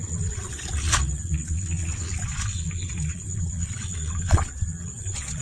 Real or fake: fake